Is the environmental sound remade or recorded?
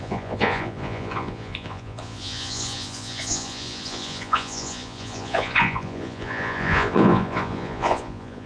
remade